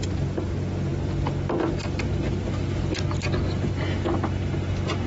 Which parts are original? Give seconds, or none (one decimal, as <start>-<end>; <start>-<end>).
0.0-5.1